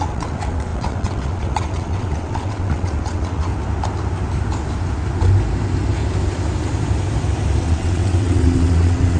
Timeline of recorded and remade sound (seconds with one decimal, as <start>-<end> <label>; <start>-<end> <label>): 0.0-3.5 remade; 3.5-7.6 recorded; 7.6-9.2 remade